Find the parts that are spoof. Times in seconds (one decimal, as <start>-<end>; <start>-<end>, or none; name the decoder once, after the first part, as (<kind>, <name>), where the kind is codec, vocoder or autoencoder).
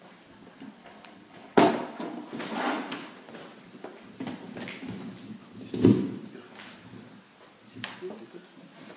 0.8-1.7 (codec, HILCodec)